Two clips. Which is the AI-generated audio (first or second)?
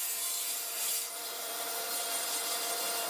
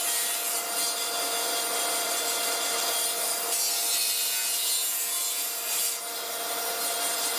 first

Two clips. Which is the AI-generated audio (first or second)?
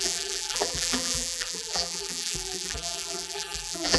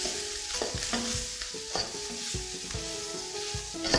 first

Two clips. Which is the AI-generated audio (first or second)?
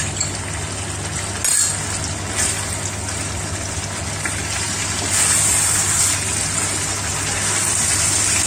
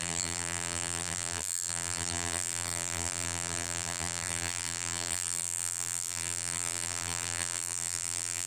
second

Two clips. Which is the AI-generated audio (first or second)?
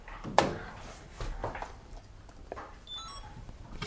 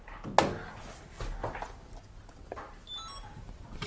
first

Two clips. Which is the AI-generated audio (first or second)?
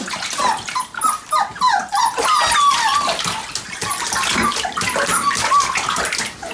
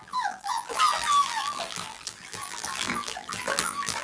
second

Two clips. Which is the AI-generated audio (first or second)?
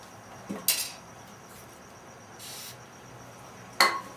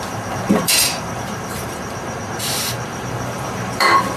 second